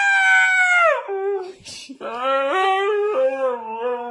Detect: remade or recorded recorded